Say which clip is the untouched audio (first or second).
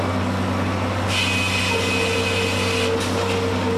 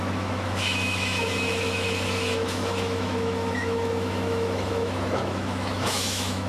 first